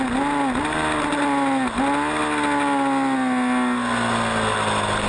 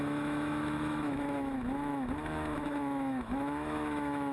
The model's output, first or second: second